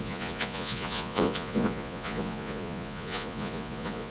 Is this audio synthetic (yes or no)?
yes